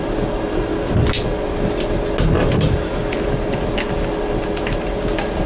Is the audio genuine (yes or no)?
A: yes